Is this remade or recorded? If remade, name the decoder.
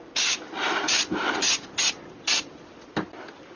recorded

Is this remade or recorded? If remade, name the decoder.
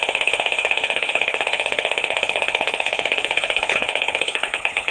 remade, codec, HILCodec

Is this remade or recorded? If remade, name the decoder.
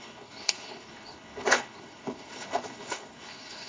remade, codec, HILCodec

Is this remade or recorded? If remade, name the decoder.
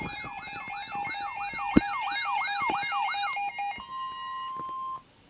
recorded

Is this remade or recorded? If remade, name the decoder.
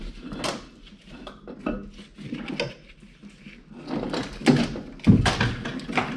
recorded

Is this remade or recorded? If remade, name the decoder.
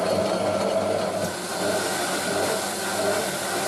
recorded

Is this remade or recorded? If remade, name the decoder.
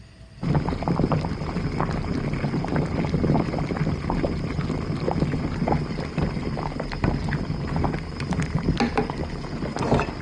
recorded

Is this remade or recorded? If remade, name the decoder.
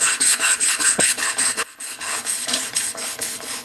remade, codec, HILCodec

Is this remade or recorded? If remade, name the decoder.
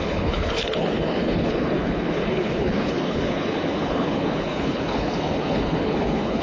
remade, codec, HILCodec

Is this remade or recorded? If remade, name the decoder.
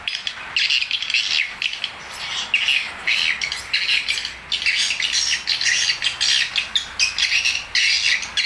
recorded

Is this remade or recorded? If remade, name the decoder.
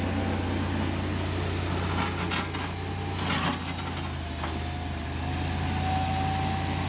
recorded